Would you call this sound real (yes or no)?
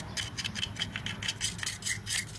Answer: yes